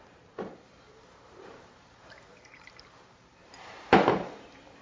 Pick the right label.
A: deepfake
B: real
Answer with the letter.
A